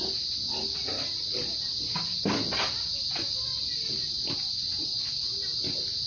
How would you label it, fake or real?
real